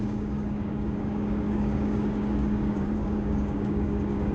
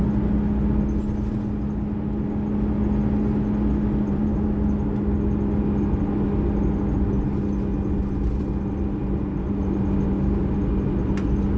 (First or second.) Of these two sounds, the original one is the second